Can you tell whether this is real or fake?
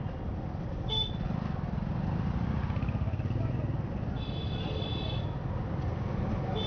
real